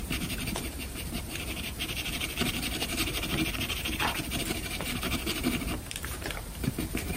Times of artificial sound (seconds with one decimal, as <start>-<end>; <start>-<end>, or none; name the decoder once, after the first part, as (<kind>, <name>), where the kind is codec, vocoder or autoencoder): 0.0-7.2 (vocoder, BigVGAN v2)